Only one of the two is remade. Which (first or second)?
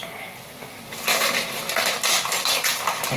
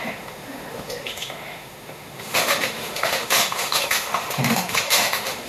second